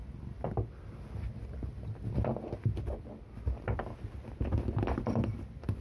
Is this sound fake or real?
real